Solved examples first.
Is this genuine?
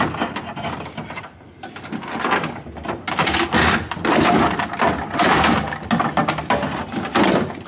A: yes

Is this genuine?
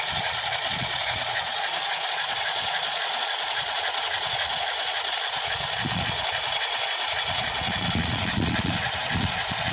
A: no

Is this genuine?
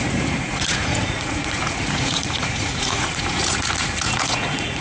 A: no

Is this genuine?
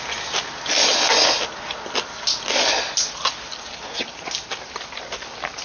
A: yes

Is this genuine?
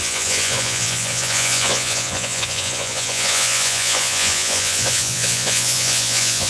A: no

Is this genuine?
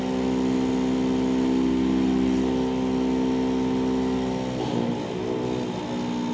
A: yes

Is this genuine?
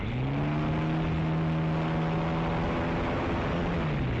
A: yes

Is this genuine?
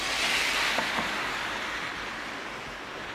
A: yes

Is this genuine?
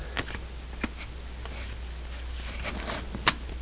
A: yes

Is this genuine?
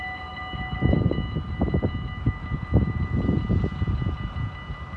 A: yes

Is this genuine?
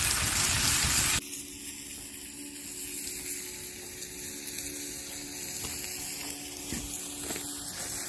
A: yes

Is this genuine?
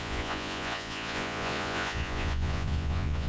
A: no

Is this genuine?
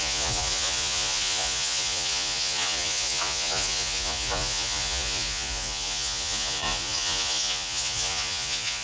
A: no